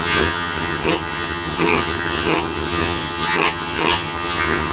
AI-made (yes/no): yes